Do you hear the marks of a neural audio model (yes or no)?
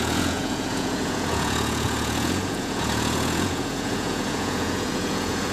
yes